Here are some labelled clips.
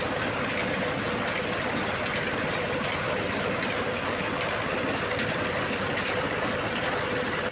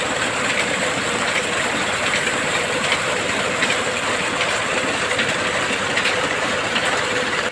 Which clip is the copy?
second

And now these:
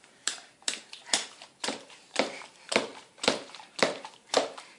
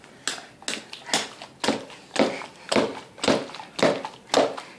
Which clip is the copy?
first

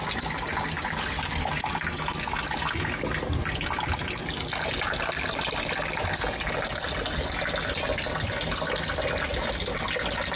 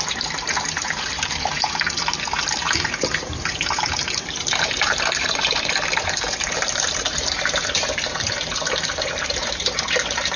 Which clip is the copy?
second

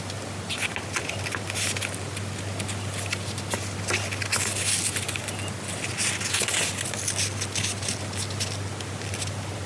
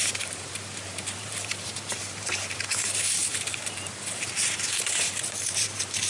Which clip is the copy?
second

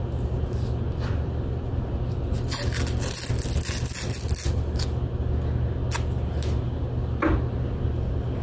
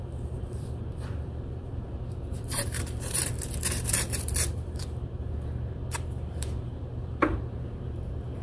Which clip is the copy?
second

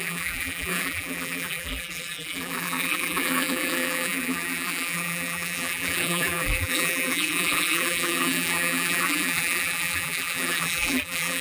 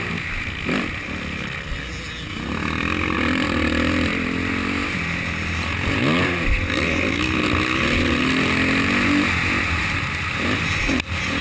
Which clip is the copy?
first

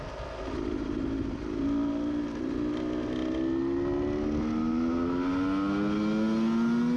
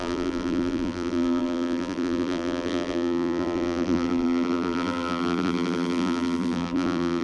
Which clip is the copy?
second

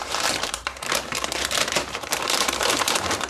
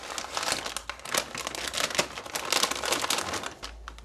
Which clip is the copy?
first